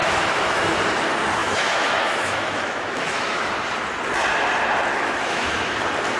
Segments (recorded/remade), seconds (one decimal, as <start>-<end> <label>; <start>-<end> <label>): 0.0-0.8 remade; 0.8-1.4 recorded; 1.4-3.5 remade; 3.5-4.9 recorded; 4.9-5.6 remade; 5.6-6.2 recorded